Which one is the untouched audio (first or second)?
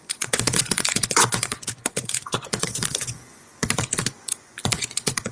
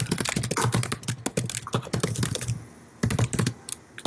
second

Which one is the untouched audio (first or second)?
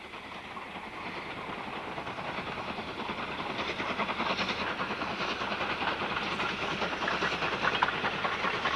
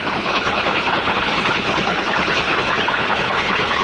first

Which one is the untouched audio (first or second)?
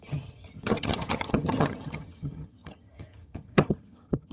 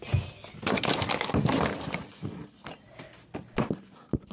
second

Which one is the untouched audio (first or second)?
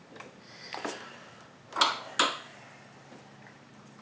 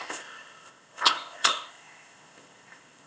first